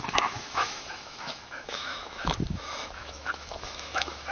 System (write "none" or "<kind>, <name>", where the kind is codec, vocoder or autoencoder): autoencoder, DAC-VAE